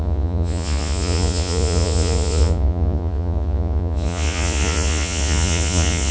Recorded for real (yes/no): no